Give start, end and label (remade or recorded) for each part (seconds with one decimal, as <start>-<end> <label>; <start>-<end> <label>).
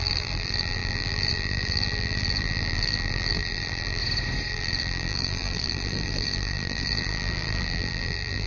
0.0-4.0 remade; 4.0-4.5 recorded; 4.5-8.5 remade